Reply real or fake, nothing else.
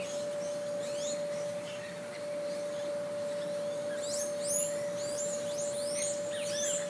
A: real